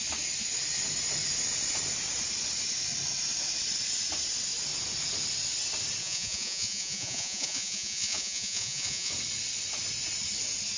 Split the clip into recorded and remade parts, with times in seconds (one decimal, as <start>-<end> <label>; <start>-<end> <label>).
0.0-6.0 recorded; 6.0-9.1 remade; 9.1-10.8 recorded